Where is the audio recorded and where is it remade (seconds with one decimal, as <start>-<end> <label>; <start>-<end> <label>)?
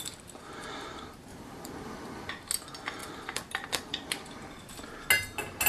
0.0-1.3 recorded; 1.3-2.3 remade; 2.3-3.0 recorded; 3.0-4.6 remade; 4.6-5.7 recorded